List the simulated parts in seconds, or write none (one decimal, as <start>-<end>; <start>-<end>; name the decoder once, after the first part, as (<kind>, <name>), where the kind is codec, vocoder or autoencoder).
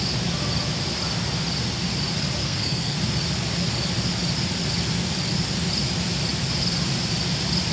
2.4-3.0 (codec, SNAC)